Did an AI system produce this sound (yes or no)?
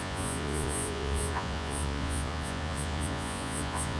yes